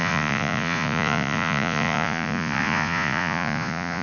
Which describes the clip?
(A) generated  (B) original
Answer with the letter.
A